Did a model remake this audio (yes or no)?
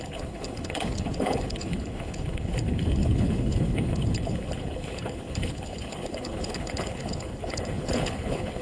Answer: yes